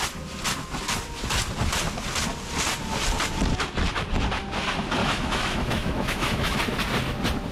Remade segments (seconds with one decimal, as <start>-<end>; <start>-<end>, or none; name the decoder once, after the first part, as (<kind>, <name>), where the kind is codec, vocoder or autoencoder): 5.0-6.6 (autoencoder, DAC-VAE)